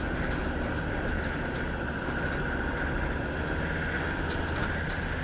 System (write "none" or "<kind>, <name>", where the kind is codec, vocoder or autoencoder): none